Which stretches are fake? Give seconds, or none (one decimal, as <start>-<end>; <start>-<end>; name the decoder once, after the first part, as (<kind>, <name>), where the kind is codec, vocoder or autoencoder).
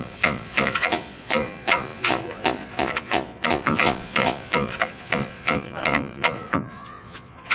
0.0-7.5 (vocoder, Vocos)